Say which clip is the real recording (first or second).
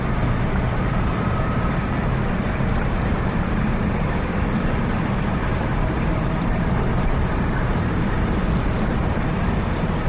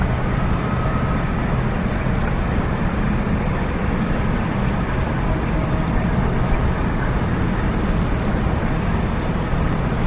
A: second